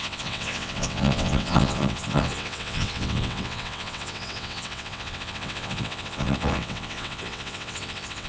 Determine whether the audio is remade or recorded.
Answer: remade